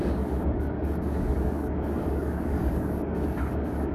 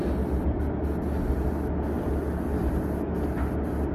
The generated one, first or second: first